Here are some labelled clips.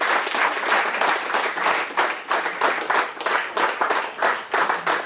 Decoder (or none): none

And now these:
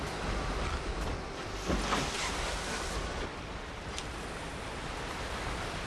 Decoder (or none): none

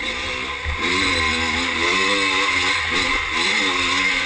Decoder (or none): none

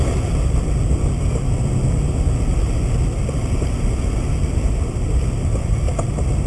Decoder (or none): none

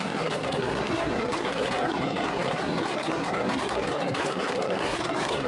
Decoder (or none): codec, SNAC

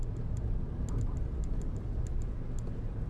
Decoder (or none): none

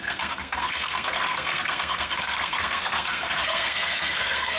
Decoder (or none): codec, SNAC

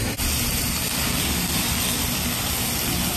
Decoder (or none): none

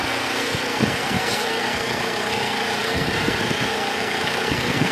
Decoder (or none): codec, SNAC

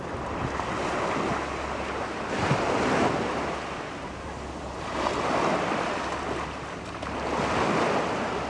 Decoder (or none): none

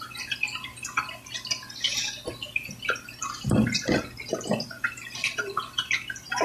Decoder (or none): vocoder, BigVGAN v2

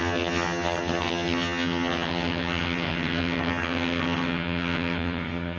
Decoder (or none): vocoder, HiFi-GAN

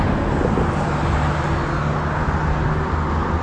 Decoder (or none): none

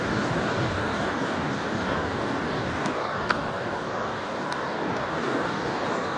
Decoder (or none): codec, DAC